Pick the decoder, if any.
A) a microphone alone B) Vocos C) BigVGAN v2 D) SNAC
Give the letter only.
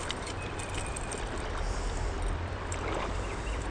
C